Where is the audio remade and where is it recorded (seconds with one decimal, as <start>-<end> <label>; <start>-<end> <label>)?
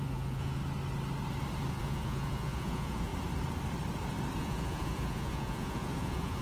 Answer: 0.0-0.6 remade; 0.6-1.7 recorded; 1.7-3.1 remade; 3.1-4.4 recorded; 4.4-6.4 remade